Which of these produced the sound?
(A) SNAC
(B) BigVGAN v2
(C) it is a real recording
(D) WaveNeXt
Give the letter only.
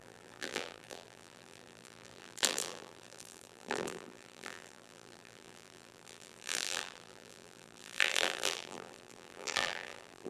B